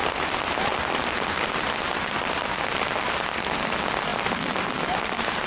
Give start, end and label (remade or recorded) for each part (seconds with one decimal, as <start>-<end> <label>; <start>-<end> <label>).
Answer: 0.0-5.5 recorded